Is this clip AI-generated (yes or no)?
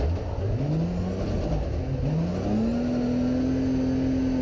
no